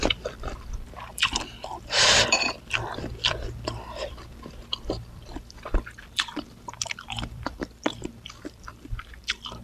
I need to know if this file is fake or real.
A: fake